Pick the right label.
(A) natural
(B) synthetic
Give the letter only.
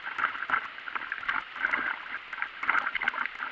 A